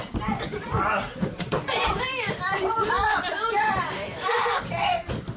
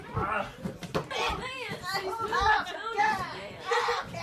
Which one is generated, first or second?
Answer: first